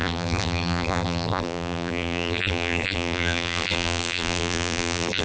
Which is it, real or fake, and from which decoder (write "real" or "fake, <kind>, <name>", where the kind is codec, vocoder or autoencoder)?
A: fake, vocoder, BigVGAN v2